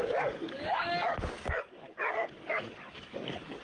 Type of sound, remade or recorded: remade